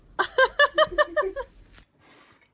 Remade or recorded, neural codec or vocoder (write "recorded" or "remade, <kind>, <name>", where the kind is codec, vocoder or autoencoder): recorded